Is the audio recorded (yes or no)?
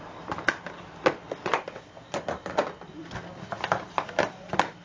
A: yes